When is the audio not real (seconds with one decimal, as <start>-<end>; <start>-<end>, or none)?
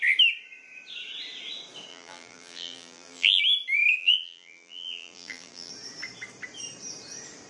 1.9-3.4; 4.0-5.7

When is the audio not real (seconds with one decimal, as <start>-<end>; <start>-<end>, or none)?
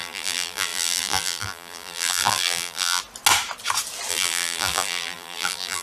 0.0-3.0; 4.1-5.8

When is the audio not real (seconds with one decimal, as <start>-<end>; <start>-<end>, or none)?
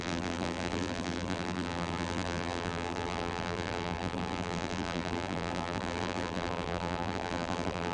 0.0-7.9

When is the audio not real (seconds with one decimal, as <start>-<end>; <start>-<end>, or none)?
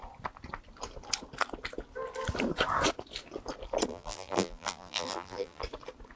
3.9-5.6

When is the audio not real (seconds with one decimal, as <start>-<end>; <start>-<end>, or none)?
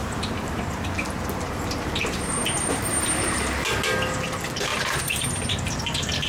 0.0-3.5; 4.7-6.3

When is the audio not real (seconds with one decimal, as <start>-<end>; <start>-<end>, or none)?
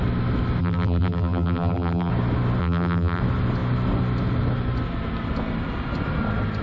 0.6-2.1; 2.6-3.2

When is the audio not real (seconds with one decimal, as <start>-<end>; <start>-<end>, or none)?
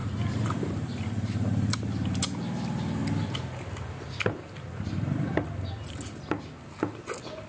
0.0-1.8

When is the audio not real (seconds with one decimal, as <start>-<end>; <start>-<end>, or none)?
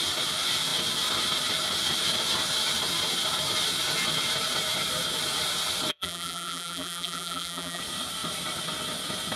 5.9-7.8